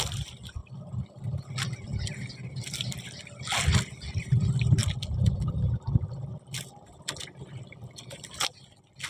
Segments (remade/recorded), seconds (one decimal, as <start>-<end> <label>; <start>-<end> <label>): 0.0-6.3 recorded; 6.3-7.1 remade; 7.1-9.1 recorded